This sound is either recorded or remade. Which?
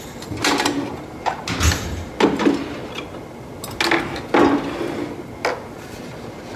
recorded